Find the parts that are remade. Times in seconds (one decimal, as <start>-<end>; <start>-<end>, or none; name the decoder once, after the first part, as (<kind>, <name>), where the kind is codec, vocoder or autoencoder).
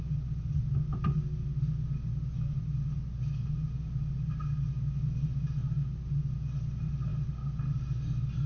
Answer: none